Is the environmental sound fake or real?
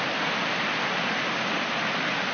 real